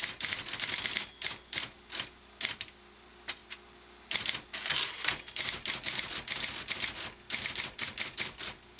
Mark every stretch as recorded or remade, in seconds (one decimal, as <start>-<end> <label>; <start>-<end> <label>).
0.0-8.8 recorded